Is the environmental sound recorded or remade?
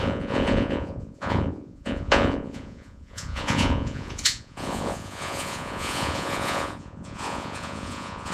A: remade